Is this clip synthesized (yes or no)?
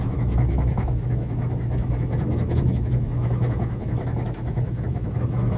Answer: yes